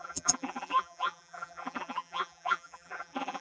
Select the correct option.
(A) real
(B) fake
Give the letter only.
B